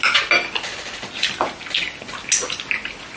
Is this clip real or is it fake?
real